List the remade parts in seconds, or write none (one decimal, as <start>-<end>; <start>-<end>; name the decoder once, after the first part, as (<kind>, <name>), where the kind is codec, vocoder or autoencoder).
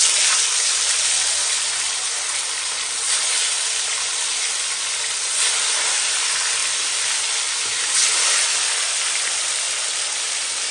none